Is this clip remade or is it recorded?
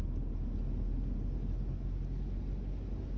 recorded